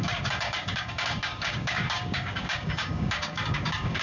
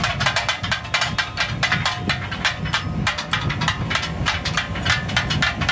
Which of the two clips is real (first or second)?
second